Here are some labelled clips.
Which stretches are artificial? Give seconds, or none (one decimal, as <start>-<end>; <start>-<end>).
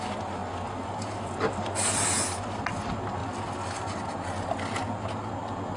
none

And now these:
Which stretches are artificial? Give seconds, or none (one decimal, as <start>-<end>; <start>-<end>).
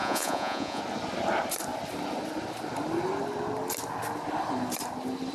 0.0-0.8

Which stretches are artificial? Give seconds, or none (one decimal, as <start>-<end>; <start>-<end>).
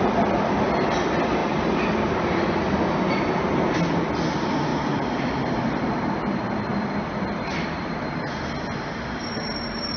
none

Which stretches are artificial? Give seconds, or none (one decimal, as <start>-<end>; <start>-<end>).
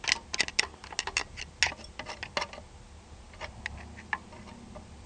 none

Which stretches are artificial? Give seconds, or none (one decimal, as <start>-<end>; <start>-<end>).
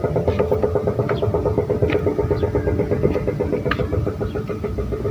none